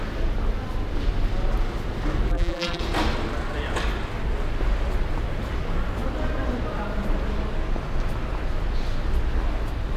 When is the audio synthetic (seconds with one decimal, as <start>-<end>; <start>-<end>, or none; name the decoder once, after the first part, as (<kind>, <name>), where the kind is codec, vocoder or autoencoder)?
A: 2.3-2.8 (vocoder, BigVGAN v2)